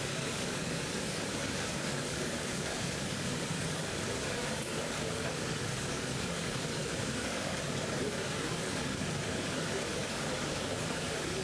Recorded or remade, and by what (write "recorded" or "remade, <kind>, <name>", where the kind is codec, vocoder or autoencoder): remade, codec, DAC